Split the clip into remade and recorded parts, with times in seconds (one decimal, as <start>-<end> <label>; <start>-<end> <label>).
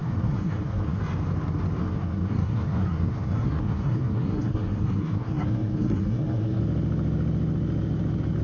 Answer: 0.0-1.0 remade; 1.0-1.8 recorded; 1.8-6.6 remade; 6.6-8.4 recorded